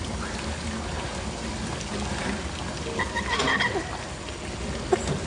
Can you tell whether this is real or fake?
real